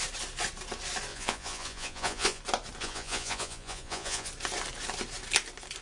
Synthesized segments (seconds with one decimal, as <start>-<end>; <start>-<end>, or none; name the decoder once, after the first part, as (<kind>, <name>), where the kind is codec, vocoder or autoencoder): 1.1-2.4 (vocoder, Vocos); 2.8-4.3